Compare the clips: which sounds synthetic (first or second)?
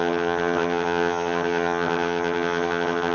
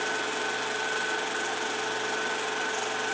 first